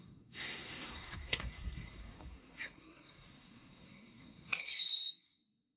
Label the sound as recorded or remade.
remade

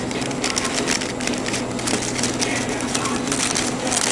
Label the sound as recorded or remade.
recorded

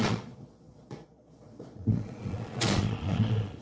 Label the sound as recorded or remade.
remade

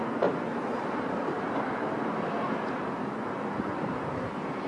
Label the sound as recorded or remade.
remade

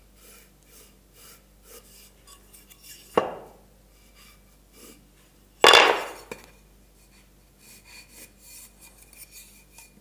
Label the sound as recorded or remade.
recorded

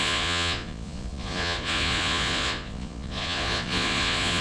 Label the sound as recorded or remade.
remade